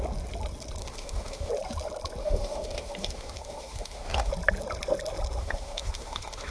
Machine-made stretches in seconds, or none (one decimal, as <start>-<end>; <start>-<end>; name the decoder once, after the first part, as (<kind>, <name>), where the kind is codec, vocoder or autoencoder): 0.8-1.5 (autoencoder, DAC-VAE); 2.2-4.3; 5.4-6.5